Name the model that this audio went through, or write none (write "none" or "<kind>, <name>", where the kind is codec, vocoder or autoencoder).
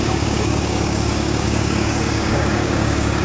codec, DAC